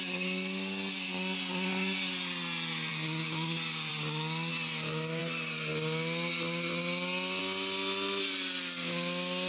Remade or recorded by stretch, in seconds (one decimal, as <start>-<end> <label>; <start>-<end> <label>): 0.0-9.5 recorded